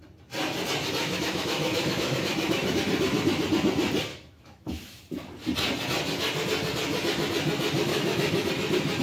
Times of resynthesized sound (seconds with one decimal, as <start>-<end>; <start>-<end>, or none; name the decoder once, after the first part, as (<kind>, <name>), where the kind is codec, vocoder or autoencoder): 1.0-2.8 (autoencoder, DAC-VAE); 4.1-5.0; 7.9-8.5